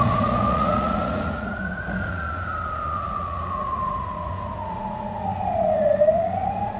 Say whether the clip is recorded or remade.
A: remade